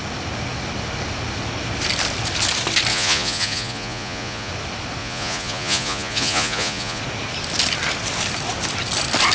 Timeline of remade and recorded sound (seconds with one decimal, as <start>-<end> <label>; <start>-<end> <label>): 0.0-2.9 recorded; 2.9-4.5 remade; 4.5-5.0 recorded; 5.0-7.0 remade; 7.0-9.3 recorded